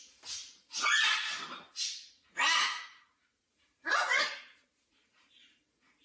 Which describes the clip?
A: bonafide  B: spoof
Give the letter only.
B